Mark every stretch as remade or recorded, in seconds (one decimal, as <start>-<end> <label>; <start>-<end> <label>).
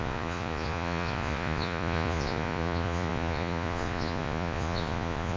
0.0-5.4 remade